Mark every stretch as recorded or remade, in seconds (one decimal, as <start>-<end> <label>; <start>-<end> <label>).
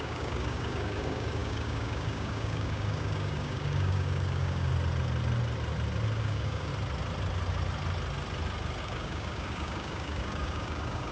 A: 0.0-4.7 remade; 4.7-6.2 recorded; 6.2-6.7 remade; 6.7-8.8 recorded; 8.8-11.1 remade